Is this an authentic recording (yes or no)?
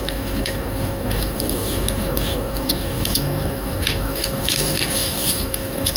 no